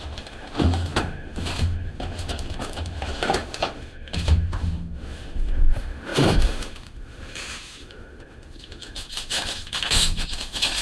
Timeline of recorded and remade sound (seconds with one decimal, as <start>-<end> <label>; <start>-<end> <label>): 0.0-10.8 remade